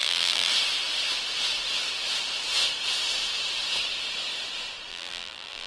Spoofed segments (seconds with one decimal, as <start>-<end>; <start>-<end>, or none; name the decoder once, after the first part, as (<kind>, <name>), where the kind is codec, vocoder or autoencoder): 0.0-0.5 (vocoder, BigVGAN v2); 4.9-5.7

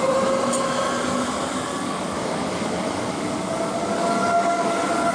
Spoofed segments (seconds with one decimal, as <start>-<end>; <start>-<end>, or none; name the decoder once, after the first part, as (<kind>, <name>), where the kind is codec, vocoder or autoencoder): 1.7-5.1 (codec, DAC)

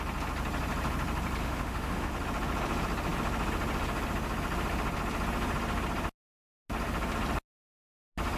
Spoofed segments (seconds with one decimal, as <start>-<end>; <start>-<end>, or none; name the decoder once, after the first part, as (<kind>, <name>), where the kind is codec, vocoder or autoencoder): 1.4-2.1 (autoencoder, DAC-VAE)

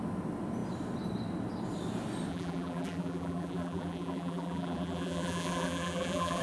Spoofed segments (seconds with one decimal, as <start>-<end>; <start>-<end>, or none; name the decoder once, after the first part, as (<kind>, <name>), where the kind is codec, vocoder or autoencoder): 2.3-6.4 (vocoder, BigVGAN v2)

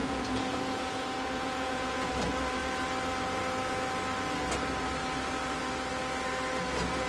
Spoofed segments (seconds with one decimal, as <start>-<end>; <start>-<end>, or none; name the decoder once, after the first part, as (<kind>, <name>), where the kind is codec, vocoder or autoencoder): 0.0-2.1 (vocoder, Vocos)

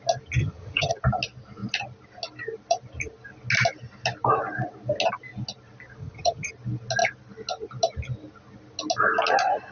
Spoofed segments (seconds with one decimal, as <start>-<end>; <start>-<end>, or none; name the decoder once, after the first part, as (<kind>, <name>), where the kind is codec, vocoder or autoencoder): 0.4-0.9 (vocoder, HiFi-GAN); 6.0-6.5

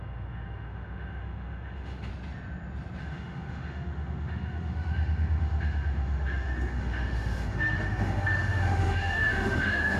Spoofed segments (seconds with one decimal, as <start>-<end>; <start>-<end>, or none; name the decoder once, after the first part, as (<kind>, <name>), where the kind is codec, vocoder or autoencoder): 0.0-2.1 (autoencoder, DAC-VAE); 3.0-10.0